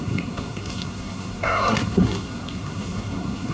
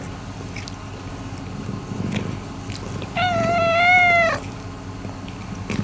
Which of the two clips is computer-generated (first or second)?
first